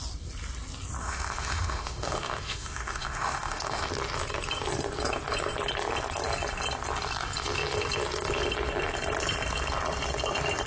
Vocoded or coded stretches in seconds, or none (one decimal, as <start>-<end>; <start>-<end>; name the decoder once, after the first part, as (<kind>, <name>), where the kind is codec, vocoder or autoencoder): 1.0-3.9 (autoencoder, DAC-VAE)